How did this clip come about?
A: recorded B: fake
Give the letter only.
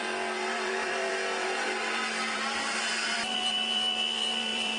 B